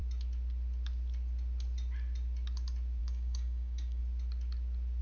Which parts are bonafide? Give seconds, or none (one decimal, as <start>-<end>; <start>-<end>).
0.0-3.0; 4.0-5.0